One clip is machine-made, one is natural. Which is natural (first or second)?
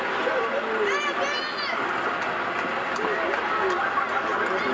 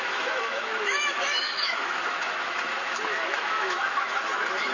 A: first